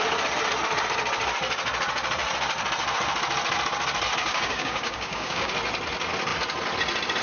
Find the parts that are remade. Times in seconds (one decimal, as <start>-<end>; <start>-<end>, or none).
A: 4.2-5.5